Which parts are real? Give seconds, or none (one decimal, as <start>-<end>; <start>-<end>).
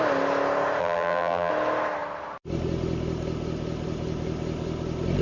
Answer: 0.0-0.8; 1.5-5.2